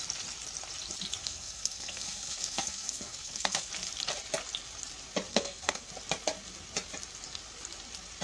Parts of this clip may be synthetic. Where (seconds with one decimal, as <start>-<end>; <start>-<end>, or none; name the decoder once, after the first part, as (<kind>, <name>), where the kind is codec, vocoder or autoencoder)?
1.2-3.7 (codec, SNAC); 5.3-5.9